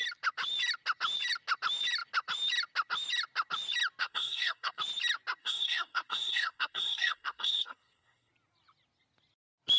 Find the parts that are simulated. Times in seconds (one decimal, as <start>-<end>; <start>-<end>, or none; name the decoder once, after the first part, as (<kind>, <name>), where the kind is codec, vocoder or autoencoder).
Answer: 4.0-4.8 (codec, SNAC); 5.4-8.3